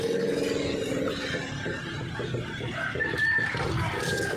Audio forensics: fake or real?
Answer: real